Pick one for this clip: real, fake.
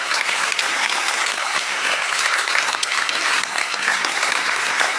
fake